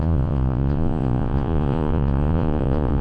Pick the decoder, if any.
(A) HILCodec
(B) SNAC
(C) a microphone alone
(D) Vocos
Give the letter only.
D